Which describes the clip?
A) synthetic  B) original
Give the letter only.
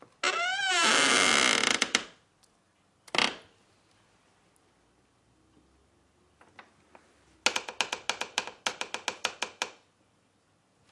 B